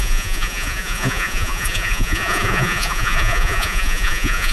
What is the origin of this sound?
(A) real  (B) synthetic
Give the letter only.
B